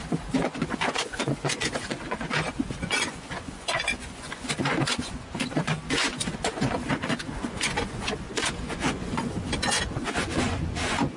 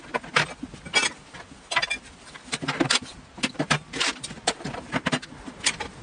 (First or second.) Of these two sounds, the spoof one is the first